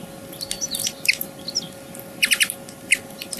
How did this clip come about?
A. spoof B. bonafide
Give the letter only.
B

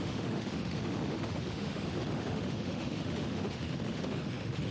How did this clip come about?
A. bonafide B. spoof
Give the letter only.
B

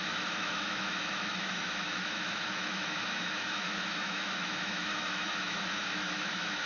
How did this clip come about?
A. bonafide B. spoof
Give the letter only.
B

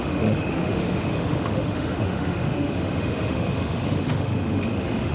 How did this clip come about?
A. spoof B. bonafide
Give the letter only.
A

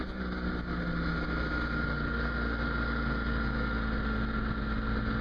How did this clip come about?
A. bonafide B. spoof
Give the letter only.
A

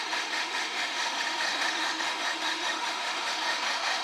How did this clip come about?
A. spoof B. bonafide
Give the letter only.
A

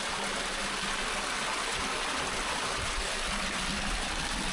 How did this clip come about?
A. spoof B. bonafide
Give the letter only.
B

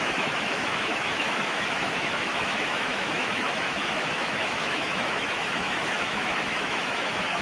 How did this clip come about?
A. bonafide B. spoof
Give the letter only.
B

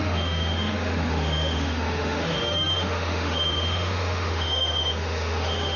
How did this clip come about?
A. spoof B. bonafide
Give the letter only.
A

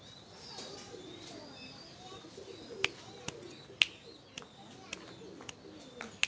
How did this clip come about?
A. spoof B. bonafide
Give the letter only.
B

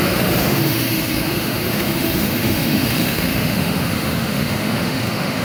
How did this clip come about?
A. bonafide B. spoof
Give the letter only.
B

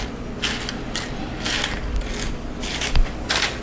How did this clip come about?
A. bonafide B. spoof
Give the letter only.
A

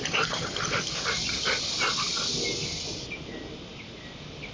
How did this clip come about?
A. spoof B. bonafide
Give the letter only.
B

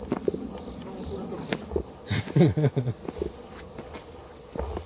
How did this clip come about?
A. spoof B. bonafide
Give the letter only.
B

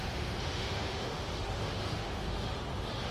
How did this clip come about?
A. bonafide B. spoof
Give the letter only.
B